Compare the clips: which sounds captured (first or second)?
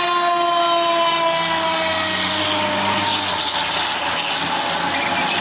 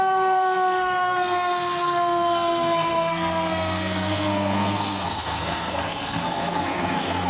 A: first